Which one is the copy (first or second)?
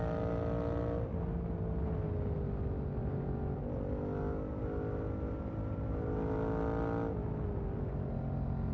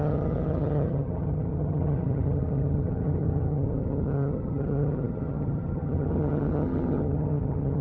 second